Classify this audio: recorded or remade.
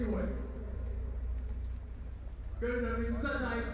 recorded